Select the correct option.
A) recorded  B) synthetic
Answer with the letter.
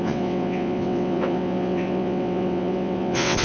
B